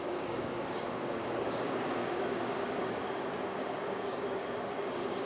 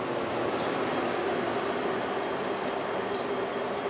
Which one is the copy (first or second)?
first